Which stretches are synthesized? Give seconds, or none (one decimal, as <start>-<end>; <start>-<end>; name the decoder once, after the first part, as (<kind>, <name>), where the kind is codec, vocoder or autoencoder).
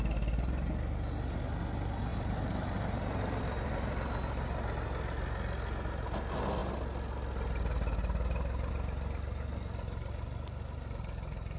2.1-3.4 (vocoder, BigVGAN v2)